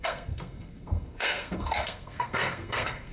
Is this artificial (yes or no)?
yes